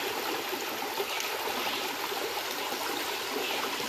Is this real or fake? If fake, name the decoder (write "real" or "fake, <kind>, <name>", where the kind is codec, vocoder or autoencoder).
real